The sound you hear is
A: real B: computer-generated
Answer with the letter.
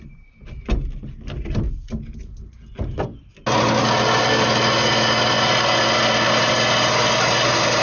A